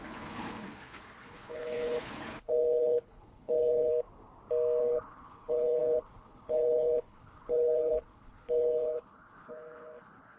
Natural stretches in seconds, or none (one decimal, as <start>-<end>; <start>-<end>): 3.9-4.8